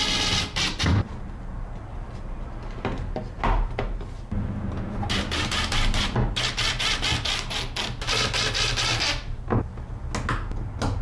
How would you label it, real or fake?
real